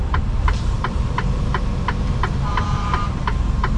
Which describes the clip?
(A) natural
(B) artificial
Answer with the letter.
B